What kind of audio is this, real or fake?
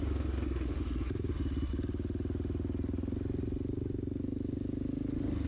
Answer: real